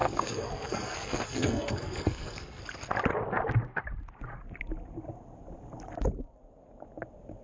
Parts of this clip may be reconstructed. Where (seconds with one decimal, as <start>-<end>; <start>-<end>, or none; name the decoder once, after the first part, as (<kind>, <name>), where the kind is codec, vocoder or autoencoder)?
0.0-2.6 (codec, SNAC)